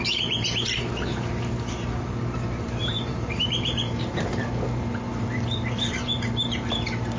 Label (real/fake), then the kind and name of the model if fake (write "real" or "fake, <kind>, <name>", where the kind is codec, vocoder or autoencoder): fake, vocoder, BigVGAN v2